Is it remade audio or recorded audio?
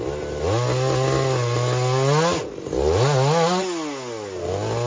recorded